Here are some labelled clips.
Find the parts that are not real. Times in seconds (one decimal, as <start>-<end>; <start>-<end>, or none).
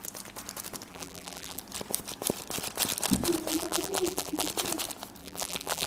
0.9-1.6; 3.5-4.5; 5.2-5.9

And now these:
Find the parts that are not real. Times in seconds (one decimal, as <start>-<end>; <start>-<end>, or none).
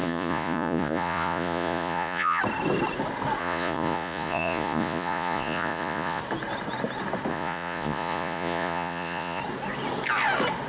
0.0-2.4; 3.4-6.2; 7.3-9.4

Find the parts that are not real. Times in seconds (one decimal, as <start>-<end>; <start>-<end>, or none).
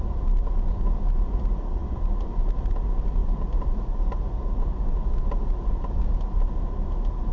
none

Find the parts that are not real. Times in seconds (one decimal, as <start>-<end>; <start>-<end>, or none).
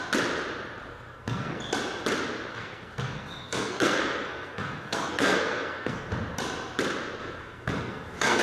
0.9-1.6; 2.5-6.1; 7.2-8.4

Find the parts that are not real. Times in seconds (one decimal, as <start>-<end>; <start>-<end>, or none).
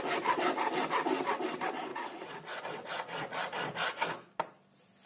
1.9-2.6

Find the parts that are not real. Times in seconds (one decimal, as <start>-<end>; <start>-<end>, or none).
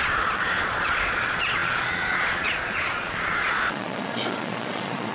0.0-5.1